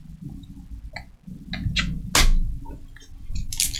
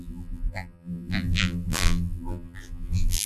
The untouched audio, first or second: first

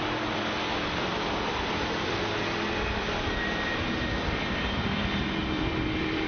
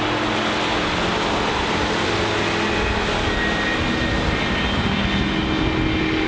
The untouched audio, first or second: second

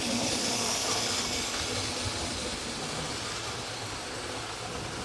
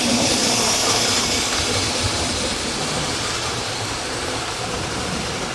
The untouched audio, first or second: first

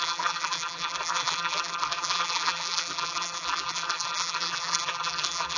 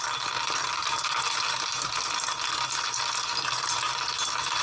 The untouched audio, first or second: second